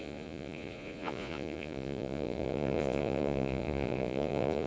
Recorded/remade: remade